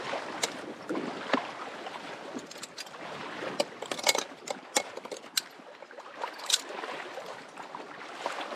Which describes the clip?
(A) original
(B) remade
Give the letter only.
A